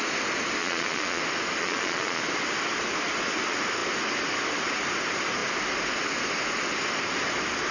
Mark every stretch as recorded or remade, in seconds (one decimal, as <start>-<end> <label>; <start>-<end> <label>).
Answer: 0.0-0.6 recorded; 0.6-1.2 remade; 1.2-1.6 recorded; 1.6-2.2 remade; 2.2-7.7 recorded